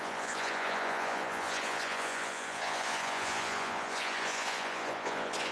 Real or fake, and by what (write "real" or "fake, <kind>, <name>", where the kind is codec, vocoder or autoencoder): fake, vocoder, Vocos